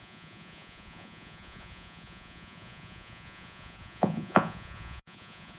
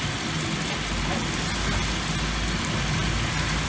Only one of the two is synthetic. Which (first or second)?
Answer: first